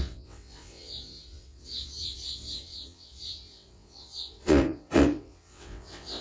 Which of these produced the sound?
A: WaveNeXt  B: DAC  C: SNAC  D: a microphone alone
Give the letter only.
A